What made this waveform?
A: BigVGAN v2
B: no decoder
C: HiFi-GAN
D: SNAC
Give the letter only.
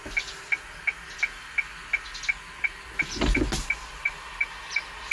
B